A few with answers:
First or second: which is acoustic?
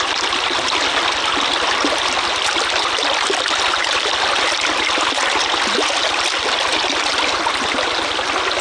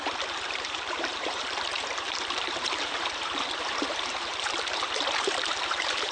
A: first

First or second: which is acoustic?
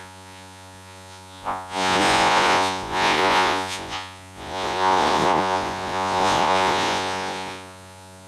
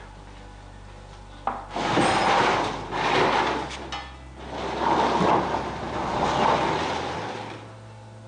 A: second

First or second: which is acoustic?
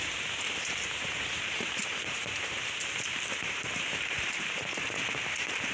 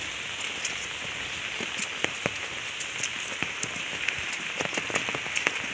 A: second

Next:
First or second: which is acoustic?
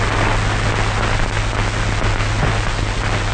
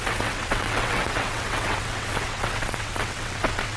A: first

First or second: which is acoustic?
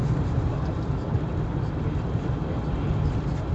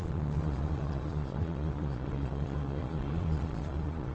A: first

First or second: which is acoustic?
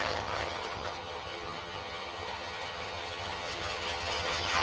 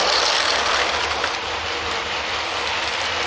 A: second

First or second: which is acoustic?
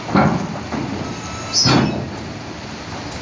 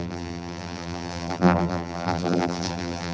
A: first